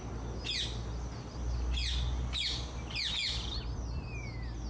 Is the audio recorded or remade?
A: recorded